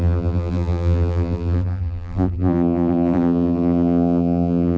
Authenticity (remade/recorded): remade